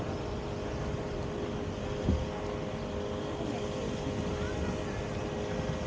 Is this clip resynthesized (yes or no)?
no